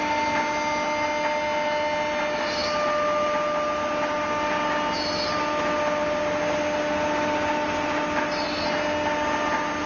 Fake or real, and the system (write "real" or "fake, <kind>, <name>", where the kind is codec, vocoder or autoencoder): real